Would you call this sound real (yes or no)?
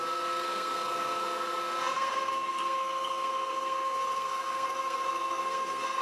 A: no